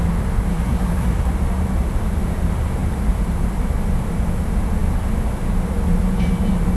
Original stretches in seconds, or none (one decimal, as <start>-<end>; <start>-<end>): 0.0-0.5; 1.3-6.8